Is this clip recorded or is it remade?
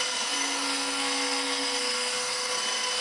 remade